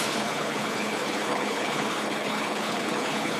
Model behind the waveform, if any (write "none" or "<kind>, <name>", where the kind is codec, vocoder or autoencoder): codec, HILCodec